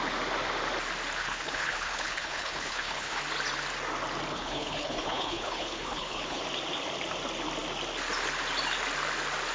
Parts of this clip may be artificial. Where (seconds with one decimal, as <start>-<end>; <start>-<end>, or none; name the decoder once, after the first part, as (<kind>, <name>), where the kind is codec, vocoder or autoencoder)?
1.2-3.2 (codec, HILCodec); 4.3-6.4